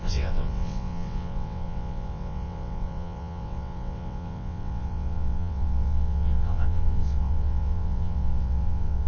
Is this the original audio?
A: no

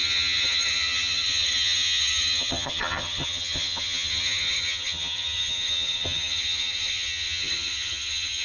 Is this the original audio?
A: no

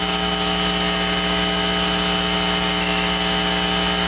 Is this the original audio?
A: yes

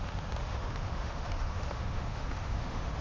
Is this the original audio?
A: no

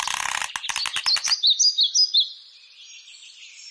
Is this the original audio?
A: yes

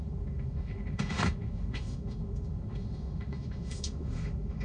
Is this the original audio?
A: no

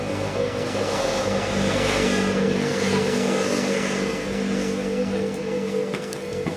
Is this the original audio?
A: no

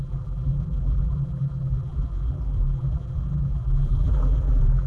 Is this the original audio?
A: no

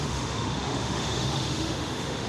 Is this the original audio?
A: no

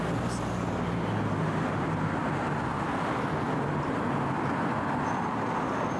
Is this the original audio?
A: yes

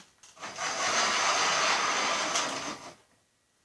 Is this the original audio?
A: yes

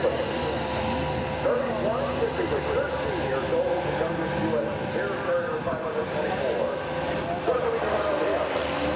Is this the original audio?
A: yes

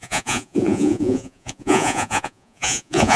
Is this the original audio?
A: no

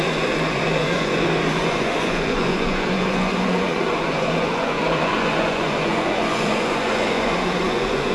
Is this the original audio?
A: no